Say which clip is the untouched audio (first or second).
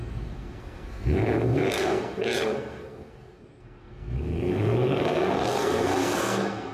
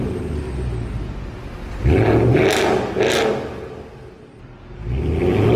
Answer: second